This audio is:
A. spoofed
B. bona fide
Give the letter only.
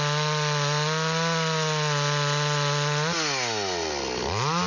B